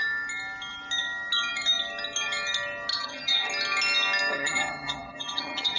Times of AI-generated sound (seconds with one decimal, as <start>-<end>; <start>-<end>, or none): 2.9-3.5; 4.3-5.8